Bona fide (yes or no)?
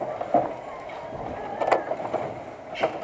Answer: yes